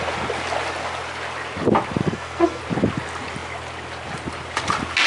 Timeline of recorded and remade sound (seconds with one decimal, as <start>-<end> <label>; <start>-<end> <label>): 0.0-2.0 recorded; 2.0-2.6 remade; 2.6-5.1 recorded